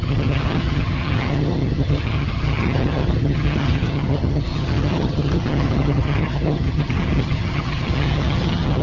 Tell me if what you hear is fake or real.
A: fake